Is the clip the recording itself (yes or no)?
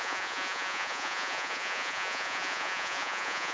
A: no